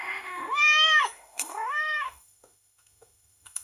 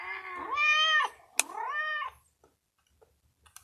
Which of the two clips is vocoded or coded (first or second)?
first